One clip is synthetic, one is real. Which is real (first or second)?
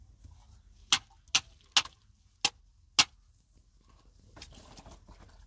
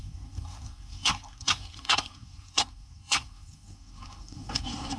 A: first